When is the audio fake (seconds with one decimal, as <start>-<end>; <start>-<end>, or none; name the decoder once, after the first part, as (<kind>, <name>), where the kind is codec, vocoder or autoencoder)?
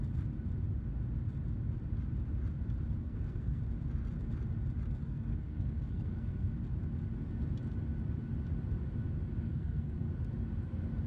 3.0-3.6 (codec, SNAC); 5.0-6.5; 9.4-10.1